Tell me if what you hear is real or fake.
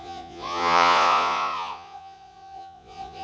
fake